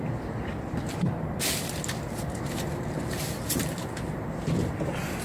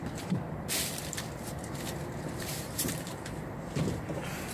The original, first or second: first